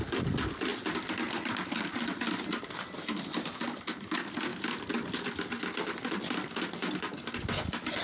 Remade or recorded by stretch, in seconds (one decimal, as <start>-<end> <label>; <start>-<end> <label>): 0.0-8.0 recorded